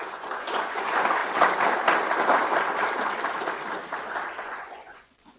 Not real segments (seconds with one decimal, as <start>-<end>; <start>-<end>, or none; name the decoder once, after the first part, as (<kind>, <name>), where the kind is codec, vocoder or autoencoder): 0.0-1.2 (vocoder, Vocos); 4.4-5.4